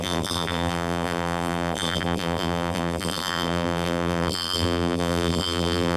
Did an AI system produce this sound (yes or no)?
yes